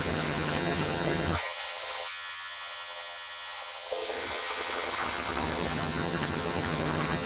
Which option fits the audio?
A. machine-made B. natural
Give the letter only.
A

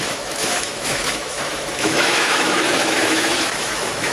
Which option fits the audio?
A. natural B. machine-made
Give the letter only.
B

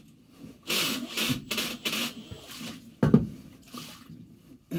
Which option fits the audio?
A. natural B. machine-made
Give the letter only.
A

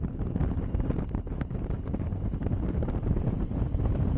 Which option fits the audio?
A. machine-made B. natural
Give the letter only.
A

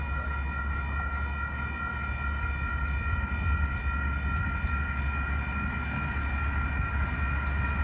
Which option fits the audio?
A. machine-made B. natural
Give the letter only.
B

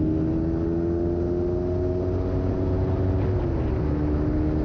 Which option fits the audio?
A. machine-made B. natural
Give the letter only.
B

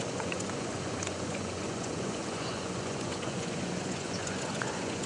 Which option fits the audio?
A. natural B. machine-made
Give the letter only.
B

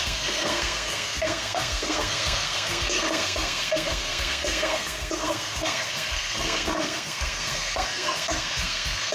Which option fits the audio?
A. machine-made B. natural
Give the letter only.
A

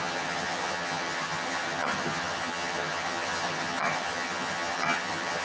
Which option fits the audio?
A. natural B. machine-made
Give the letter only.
B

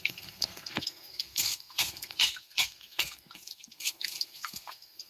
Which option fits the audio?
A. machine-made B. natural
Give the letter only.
A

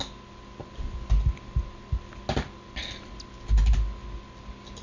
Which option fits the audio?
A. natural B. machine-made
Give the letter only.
A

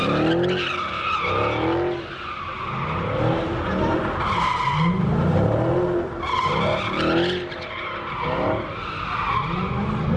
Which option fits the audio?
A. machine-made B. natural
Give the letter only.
B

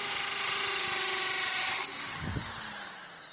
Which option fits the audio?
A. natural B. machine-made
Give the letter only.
A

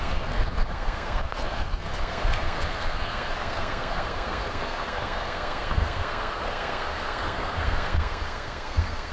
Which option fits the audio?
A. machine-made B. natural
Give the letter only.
A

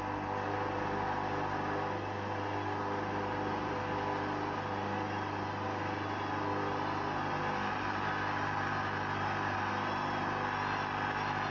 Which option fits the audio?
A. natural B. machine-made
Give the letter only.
A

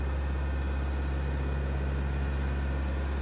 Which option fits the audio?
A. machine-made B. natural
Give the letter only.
B